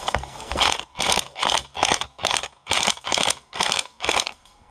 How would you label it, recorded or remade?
remade